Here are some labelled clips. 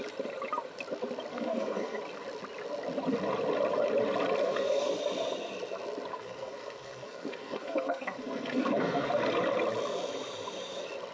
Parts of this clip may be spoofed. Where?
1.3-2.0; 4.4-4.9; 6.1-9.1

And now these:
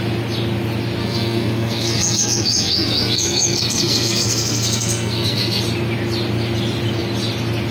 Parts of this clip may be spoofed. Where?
1.0-5.6

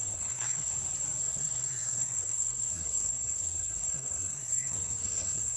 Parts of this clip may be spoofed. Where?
0.0-0.7; 1.2-5.6

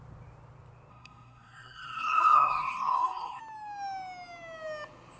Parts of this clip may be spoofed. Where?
0.9-3.4

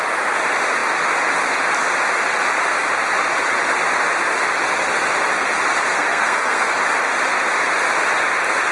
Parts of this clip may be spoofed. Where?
5.9-6.7

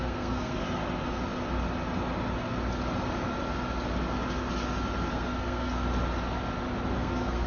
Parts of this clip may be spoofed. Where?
0.0-0.6; 5.1-5.8; 7.0-7.5

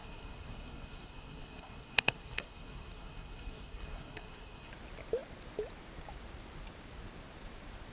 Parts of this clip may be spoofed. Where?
0.0-4.7